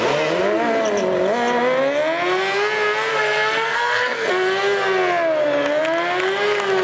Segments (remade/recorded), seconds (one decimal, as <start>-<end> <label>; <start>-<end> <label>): 0.0-3.1 recorded; 3.1-4.3 remade; 4.3-6.8 recorded